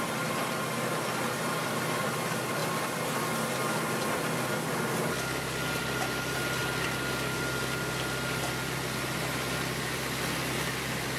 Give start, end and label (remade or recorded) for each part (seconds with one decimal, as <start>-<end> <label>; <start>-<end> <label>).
0.0-11.2 recorded